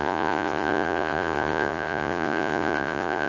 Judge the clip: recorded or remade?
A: remade